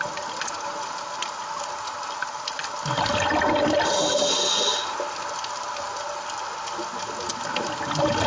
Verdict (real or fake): real